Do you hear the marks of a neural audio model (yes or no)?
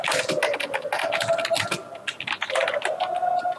no